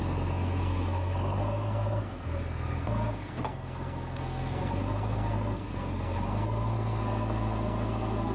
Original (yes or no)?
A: no